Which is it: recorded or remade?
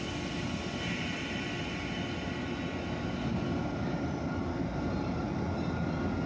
recorded